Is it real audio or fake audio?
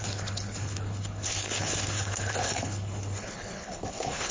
fake